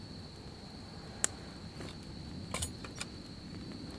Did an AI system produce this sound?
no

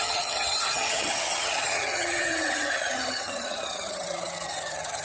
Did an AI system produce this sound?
yes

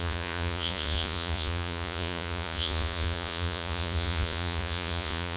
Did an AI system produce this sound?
yes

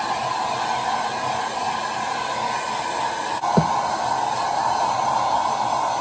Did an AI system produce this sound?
no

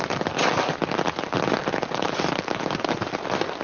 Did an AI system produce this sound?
no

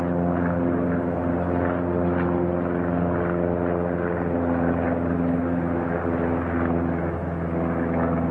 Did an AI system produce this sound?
no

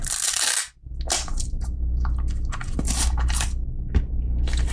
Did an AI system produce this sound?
no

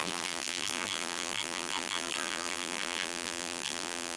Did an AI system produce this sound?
yes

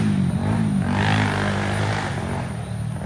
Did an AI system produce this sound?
no